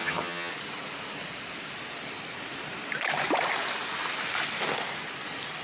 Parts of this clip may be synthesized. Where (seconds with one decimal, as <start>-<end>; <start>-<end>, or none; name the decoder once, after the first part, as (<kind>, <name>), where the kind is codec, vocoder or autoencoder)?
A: 0.0-0.5 (vocoder, HiFi-GAN)

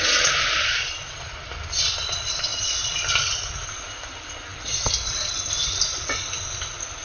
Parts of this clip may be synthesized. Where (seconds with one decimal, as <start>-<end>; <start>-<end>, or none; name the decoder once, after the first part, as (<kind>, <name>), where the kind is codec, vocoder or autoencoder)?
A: none